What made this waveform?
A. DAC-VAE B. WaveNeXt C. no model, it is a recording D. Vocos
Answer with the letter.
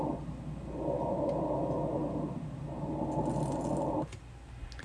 C